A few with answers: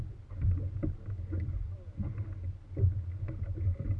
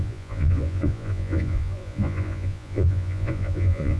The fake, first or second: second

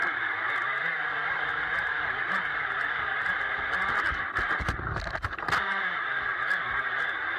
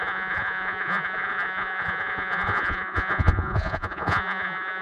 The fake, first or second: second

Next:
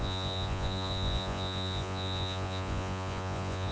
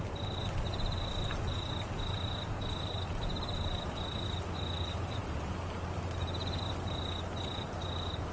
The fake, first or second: first